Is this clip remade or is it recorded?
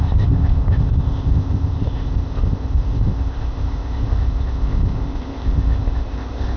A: remade